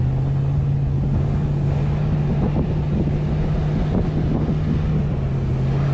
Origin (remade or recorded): recorded